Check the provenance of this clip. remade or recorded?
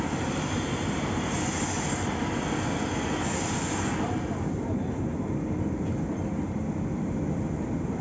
recorded